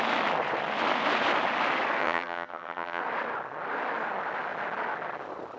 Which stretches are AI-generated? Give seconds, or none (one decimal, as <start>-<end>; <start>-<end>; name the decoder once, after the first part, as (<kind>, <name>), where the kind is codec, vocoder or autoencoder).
2.0-3.0 (vocoder, HiFi-GAN)